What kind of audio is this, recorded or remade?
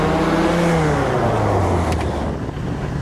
recorded